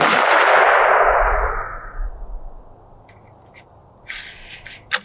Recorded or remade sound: recorded